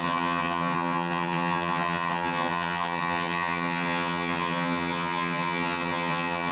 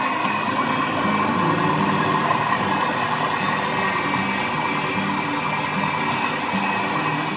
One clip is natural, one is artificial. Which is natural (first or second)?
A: second